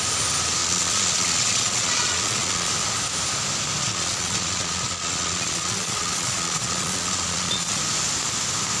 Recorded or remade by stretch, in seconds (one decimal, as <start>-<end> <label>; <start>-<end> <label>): 0.0-0.6 recorded; 0.6-2.7 remade; 2.7-3.8 recorded; 3.8-7.8 remade; 7.8-8.8 recorded